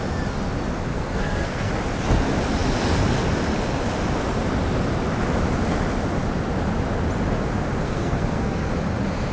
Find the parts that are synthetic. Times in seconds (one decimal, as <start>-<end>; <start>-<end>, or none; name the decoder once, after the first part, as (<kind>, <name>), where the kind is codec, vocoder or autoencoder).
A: 0.9-1.7 (codec, SNAC); 7.8-8.7